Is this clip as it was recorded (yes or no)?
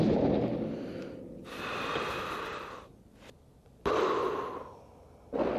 yes